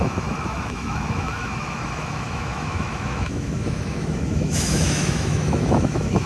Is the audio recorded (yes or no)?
no